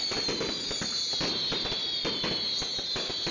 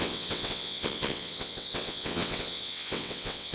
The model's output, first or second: second